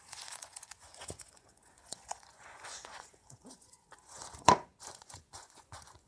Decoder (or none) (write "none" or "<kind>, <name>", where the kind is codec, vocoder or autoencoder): vocoder, Vocos